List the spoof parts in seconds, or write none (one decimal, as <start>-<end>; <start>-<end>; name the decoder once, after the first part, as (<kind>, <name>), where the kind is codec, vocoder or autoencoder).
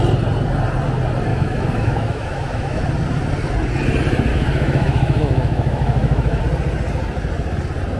1.3-2.8 (autoencoder, DAC-VAE); 4.3-6.4